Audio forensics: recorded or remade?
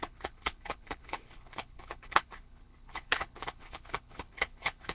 remade